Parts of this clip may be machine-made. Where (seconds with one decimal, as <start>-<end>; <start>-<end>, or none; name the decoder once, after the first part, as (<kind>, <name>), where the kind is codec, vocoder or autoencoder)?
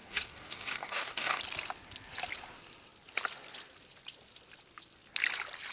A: 0.0-1.4 (codec, DAC)